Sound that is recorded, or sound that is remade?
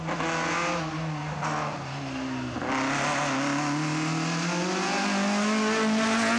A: recorded